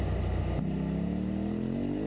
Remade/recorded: recorded